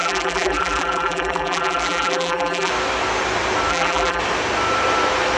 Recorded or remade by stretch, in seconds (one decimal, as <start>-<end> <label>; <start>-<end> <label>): 0.0-2.7 remade; 2.7-3.7 recorded; 3.7-4.2 remade; 4.2-5.4 recorded